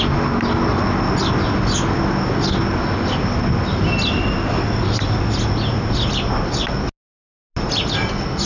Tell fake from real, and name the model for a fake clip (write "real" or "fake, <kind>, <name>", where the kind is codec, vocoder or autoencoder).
real